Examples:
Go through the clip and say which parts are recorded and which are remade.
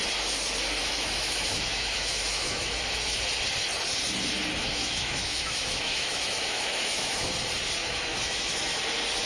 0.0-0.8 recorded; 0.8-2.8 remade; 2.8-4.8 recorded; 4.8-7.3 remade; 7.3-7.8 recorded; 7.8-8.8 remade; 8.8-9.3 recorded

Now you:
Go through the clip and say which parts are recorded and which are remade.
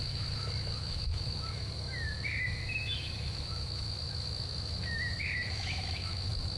0.0-6.6 remade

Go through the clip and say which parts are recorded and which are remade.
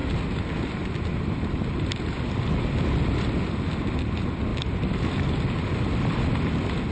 0.0-6.9 recorded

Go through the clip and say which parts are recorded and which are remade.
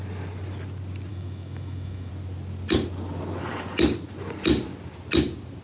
0.0-1.1 recorded; 1.1-2.1 remade; 2.1-5.6 recorded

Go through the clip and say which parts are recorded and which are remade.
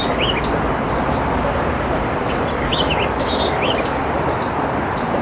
0.0-2.7 recorded; 2.7-3.7 remade; 3.7-5.2 recorded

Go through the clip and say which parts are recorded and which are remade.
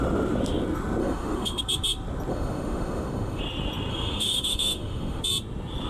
0.0-1.0 recorded; 1.0-1.6 remade; 1.6-2.3 recorded; 2.3-3.4 remade; 3.4-3.9 recorded; 3.9-5.2 remade; 5.2-5.9 recorded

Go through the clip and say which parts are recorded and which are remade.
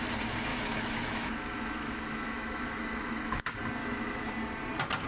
0.0-0.5 recorded; 0.5-3.4 remade; 3.4-3.8 recorded; 3.8-4.3 remade; 4.3-5.1 recorded